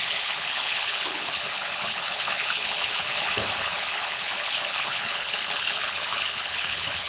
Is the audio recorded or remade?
remade